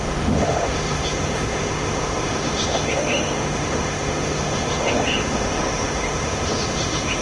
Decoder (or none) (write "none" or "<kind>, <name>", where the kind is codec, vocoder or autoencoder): autoencoder, DAC-VAE